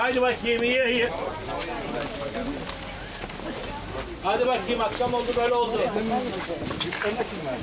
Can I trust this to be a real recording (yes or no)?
yes